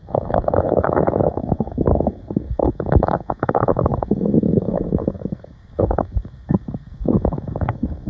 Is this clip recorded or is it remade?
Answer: remade